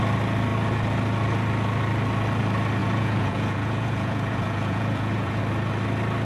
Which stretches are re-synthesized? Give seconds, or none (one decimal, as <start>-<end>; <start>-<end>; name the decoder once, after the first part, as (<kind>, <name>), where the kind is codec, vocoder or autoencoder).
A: 2.8-5.4 (vocoder, Vocos)